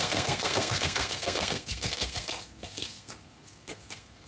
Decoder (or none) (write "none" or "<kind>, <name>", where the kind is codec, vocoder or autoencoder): codec, SNAC